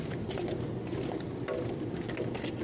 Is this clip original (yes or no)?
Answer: yes